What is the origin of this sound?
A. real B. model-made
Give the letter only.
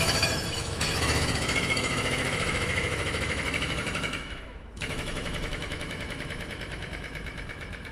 B